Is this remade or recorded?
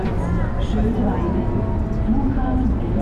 recorded